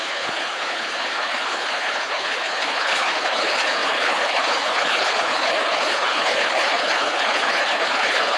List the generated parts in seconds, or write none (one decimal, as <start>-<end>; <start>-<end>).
0.0-8.4